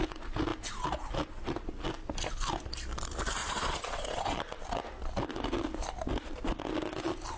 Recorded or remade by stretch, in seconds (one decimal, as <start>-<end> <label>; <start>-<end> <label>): 0.0-3.4 recorded; 3.4-4.4 remade; 4.4-7.4 recorded